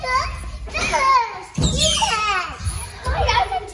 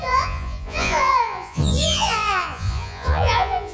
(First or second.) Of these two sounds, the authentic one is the first